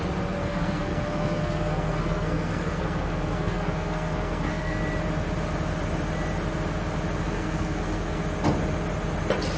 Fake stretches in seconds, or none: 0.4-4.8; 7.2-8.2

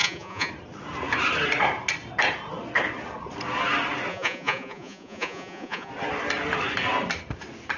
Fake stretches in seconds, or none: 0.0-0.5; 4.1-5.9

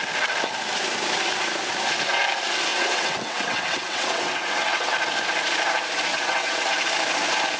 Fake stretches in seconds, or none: 2.7-4.9; 6.1-6.7